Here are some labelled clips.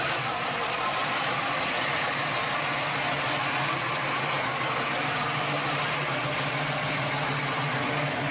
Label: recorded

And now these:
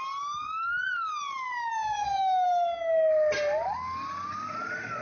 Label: recorded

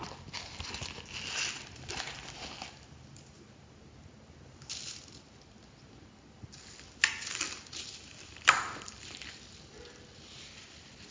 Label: recorded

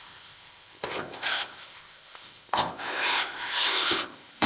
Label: remade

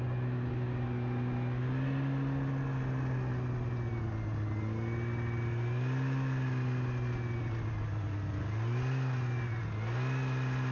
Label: recorded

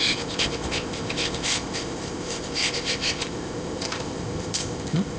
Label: remade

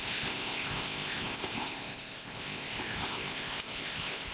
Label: remade